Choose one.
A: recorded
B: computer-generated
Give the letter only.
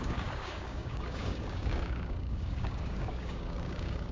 B